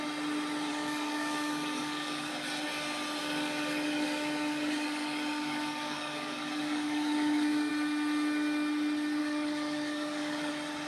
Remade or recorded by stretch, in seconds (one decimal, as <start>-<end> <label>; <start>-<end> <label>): 0.0-0.7 recorded; 0.7-2.3 remade; 2.3-3.2 recorded; 3.2-7.7 remade; 7.7-9.2 recorded; 9.2-10.5 remade; 10.5-10.9 recorded